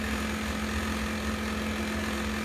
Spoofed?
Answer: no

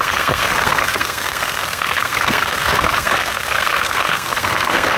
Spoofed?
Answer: yes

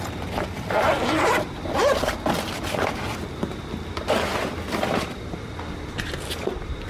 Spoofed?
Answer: no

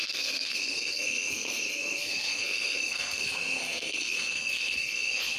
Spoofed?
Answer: yes